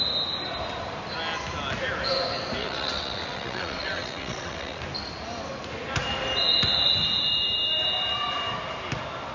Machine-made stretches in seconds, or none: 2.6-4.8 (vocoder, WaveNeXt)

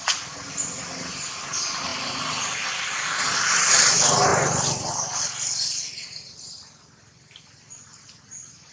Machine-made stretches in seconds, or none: none

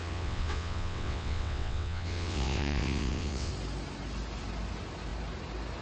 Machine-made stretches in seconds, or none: 0.0-3.5 (vocoder, WaveNeXt)

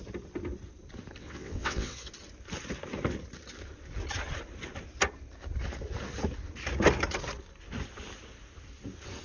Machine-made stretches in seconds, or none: 1.2-2.1 (vocoder, WaveNeXt)

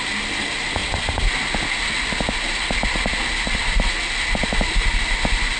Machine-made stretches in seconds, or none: none